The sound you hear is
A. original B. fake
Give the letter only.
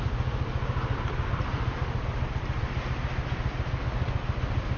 A